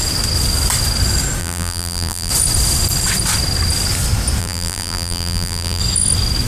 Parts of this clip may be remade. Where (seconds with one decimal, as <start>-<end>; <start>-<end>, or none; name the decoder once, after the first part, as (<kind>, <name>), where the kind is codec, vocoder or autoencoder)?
1.4-2.3 (vocoder, BigVGAN v2); 4.4-5.8

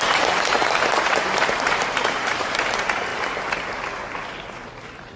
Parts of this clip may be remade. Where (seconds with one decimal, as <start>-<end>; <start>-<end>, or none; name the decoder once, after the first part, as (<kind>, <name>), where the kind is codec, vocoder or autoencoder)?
0.0-3.1 (vocoder, BigVGAN v2)

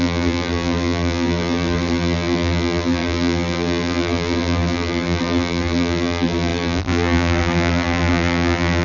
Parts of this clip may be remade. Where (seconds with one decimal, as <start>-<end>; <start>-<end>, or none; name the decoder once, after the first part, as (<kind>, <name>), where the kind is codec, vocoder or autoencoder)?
0.0-8.8 (vocoder, BigVGAN v2)

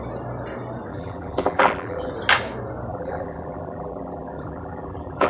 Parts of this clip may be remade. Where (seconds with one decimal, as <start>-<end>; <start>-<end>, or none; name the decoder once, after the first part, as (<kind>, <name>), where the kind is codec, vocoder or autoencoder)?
0.9-2.1 (vocoder, BigVGAN v2); 2.9-5.3

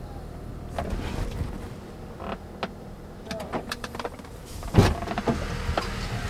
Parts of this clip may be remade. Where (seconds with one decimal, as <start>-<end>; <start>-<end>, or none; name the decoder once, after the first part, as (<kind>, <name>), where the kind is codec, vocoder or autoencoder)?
0.0-0.5 (vocoder, BigVGAN v2); 3.5-4.8

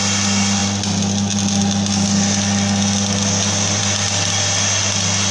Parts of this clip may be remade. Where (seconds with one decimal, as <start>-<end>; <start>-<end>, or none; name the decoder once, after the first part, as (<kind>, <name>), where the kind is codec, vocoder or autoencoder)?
none